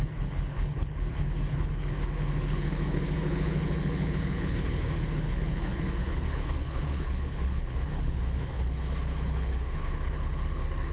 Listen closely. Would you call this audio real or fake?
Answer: fake